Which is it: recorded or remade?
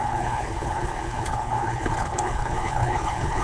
remade